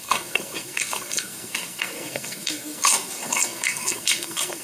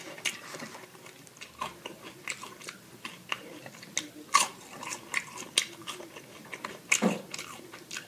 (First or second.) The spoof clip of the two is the first